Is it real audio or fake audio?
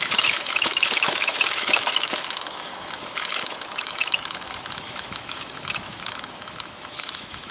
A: fake